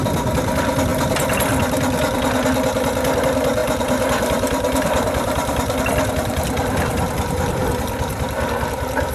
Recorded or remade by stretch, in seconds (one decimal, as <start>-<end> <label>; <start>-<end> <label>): 0.0-3.6 recorded; 3.6-5.8 remade; 5.8-9.1 recorded